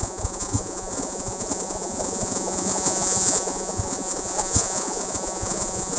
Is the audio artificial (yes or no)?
yes